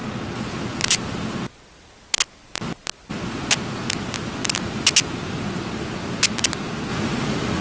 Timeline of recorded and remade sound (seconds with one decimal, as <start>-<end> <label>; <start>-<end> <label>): 0.0-6.9 recorded; 6.9-7.6 remade